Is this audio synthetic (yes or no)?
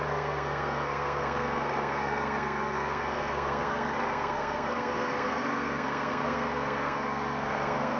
yes